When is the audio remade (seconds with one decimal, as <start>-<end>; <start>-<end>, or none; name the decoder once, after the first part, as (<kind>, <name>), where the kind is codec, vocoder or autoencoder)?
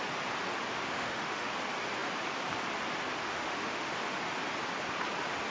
0.7-1.5 (autoencoder, DAC-VAE); 3.2-3.9